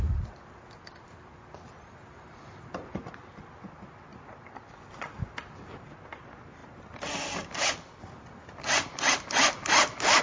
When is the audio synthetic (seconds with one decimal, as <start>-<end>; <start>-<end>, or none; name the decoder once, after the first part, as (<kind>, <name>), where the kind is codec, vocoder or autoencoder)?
none